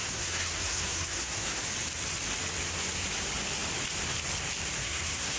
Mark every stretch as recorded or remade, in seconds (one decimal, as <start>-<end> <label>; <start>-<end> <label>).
0.0-1.6 remade; 1.6-4.8 recorded; 4.8-5.4 remade